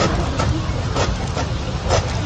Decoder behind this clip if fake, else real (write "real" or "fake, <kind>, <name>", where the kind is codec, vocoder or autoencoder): fake, vocoder, BigVGAN v2